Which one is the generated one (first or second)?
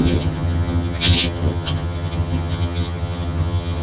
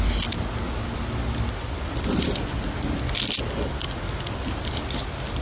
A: first